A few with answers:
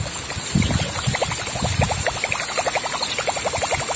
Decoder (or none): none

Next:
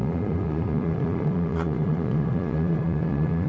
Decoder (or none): vocoder, Vocos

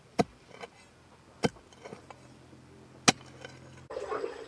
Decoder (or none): none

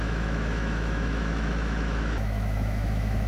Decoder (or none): autoencoder, DAC-VAE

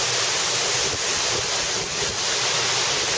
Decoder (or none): none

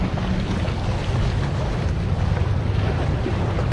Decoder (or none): none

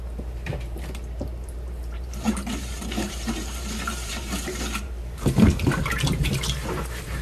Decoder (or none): vocoder, BigVGAN v2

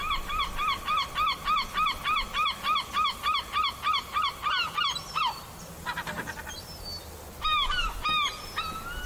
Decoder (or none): none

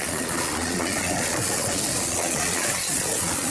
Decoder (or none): vocoder, Vocos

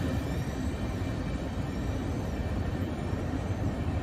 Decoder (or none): vocoder, BigVGAN v2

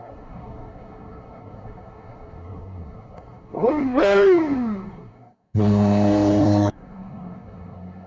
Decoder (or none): codec, SNAC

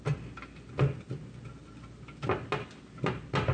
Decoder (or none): none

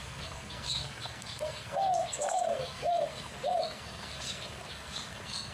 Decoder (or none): codec, SNAC